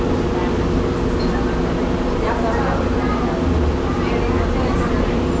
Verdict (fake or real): real